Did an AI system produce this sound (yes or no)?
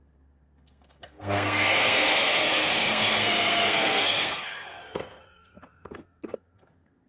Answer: yes